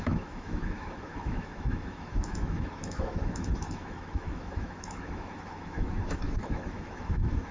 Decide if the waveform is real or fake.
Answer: fake